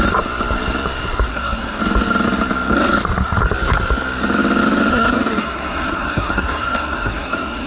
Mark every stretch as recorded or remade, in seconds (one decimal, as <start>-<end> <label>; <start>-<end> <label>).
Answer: 0.0-1.3 recorded; 1.3-1.8 remade; 1.8-4.9 recorded; 4.9-7.7 remade